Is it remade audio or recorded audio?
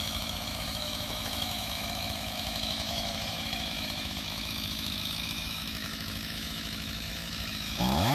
remade